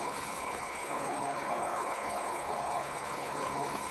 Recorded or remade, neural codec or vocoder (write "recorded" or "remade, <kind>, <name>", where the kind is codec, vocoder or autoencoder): remade, codec, HILCodec